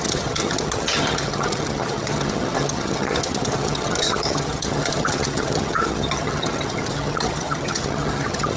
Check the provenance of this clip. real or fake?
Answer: fake